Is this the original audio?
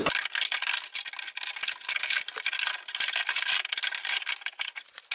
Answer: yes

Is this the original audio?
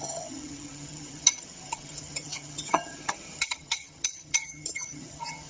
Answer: no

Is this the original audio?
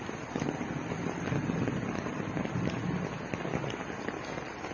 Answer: yes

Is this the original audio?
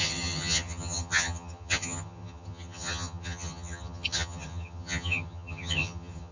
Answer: no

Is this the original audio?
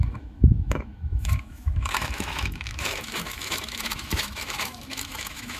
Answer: no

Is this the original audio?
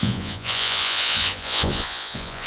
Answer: no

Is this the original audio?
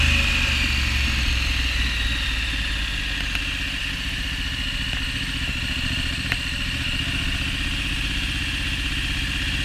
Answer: yes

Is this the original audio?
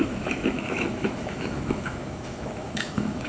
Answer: no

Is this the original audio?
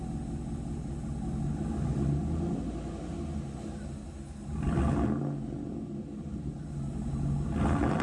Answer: yes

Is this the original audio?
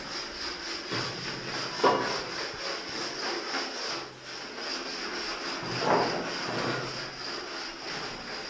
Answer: yes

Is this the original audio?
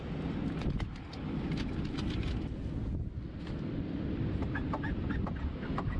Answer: yes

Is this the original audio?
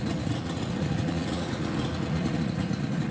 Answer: no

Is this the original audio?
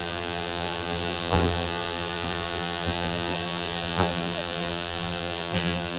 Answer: no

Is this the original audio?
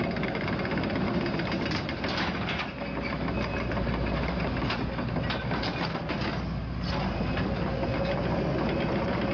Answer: yes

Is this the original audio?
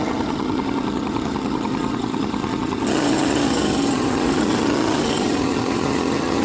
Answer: no